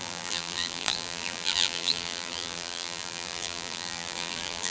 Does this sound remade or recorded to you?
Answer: remade